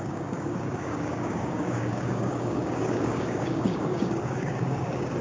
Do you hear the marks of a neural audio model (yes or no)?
yes